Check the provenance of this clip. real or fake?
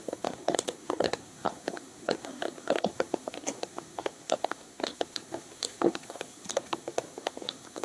fake